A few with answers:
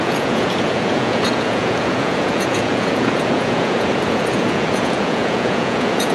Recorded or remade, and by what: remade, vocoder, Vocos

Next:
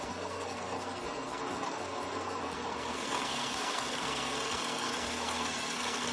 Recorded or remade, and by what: remade, codec, SNAC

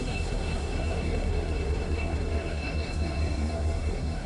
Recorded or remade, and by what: remade, codec, SNAC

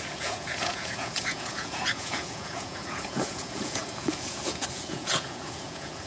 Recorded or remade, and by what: remade, vocoder, Vocos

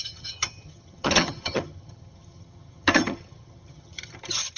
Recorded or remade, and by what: remade, vocoder, HiFi-GAN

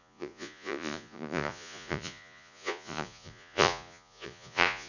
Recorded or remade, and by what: remade, vocoder, Vocos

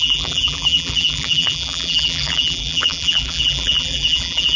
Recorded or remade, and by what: remade, vocoder, BigVGAN v2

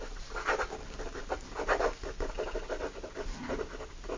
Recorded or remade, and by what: recorded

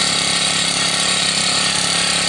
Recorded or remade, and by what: remade, vocoder, BigVGAN v2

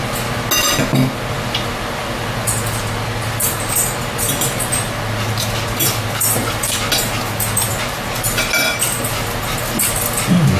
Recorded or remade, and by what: recorded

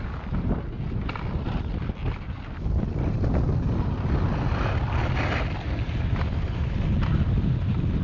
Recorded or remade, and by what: recorded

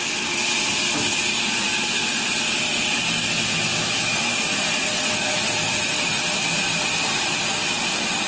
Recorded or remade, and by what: recorded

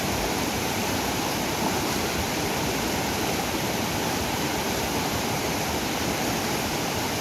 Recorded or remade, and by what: remade, vocoder, BigVGAN v2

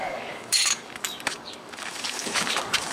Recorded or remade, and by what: remade, codec, DAC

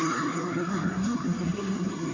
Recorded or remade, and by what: remade, codec, SNAC